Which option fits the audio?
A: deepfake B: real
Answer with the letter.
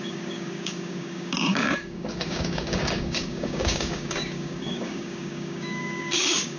A